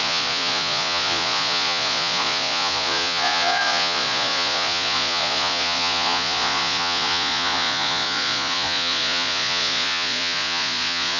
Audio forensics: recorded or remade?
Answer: remade